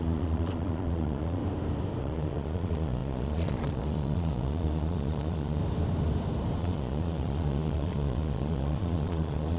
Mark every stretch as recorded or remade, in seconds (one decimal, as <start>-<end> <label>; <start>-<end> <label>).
0.0-1.4 remade; 1.4-2.0 recorded; 2.0-5.6 remade; 5.6-6.6 recorded; 6.6-9.6 remade